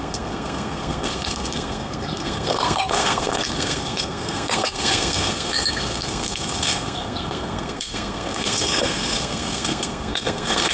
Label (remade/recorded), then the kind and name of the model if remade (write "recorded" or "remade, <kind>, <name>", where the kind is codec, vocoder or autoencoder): remade, codec, SNAC